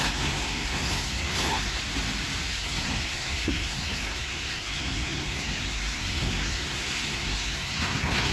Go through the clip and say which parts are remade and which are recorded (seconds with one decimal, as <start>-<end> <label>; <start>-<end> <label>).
0.0-1.8 remade; 1.8-2.5 recorded; 2.5-8.3 remade